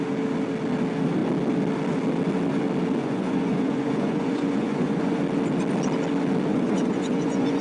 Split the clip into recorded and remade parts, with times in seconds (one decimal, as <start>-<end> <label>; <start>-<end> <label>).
0.0-3.0 recorded; 3.0-5.2 remade; 5.2-6.5 recorded; 6.5-7.6 remade